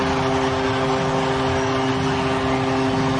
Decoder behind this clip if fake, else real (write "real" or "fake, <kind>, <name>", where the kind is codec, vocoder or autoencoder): real